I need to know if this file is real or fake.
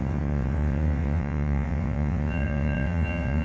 fake